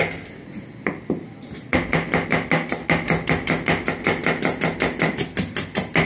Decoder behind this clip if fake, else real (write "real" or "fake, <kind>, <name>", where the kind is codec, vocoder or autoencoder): real